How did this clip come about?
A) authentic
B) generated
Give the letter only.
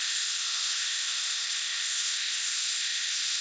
B